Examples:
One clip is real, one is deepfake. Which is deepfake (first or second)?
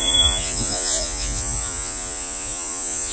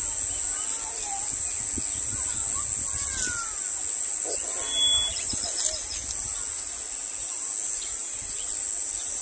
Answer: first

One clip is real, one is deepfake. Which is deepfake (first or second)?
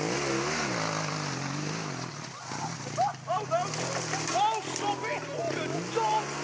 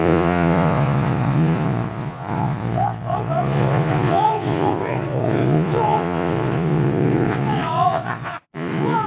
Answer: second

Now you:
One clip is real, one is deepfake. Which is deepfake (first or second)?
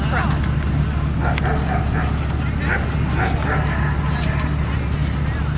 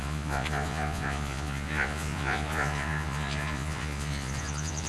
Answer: second